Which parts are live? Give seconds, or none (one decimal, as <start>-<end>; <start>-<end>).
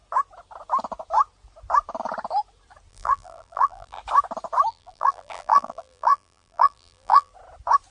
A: 0.0-2.9; 4.0-4.7; 7.3-7.9